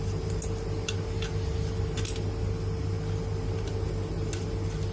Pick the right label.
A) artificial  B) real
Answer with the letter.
B